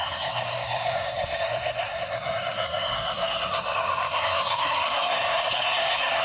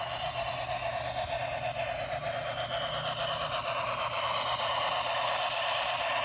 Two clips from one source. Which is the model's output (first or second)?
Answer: first